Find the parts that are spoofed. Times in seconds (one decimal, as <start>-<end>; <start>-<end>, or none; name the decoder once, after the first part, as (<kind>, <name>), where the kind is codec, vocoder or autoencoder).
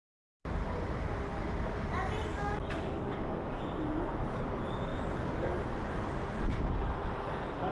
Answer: 2.3-3.6 (codec, DAC)